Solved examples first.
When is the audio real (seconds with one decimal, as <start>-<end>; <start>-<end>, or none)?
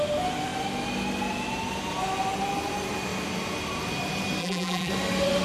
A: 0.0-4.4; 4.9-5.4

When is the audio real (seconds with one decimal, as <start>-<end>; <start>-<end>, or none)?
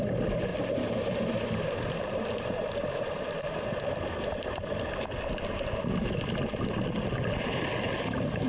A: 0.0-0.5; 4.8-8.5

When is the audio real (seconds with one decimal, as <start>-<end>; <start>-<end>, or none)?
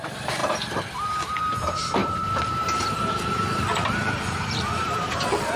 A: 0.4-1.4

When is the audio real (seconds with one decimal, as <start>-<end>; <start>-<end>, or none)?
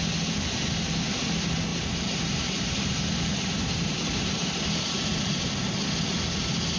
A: 0.0-1.7; 5.8-6.8